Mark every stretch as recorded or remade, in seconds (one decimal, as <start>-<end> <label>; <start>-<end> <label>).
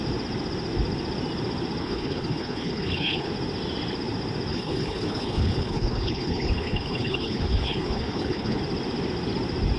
0.0-1.8 recorded; 1.8-3.3 remade; 3.3-4.5 recorded; 4.5-8.6 remade; 8.6-9.8 recorded